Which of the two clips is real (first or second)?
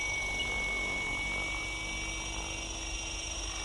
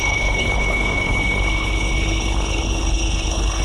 first